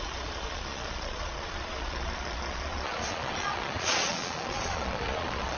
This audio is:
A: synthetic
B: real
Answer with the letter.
A